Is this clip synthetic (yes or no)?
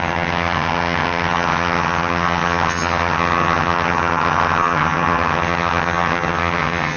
yes